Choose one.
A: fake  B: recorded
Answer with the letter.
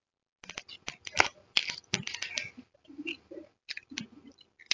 B